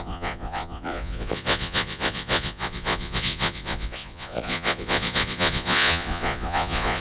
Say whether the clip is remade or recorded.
remade